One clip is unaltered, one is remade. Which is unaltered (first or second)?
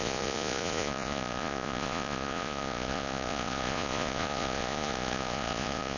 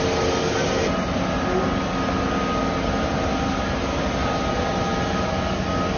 second